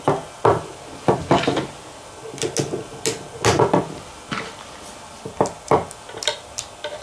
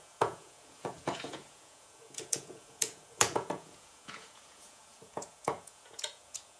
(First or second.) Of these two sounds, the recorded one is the first